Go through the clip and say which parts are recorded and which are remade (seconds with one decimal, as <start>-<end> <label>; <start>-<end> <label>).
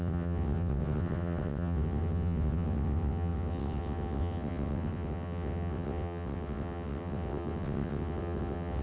0.0-8.8 remade